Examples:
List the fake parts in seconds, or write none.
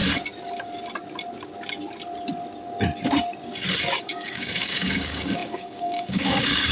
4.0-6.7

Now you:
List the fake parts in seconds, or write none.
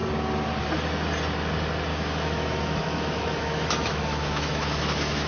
1.9-5.3